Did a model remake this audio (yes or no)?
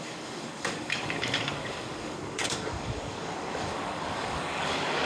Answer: yes